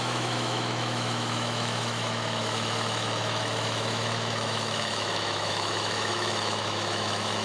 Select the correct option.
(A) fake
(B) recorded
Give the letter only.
A